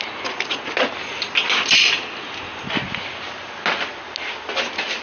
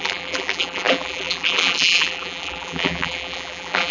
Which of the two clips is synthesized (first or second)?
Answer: second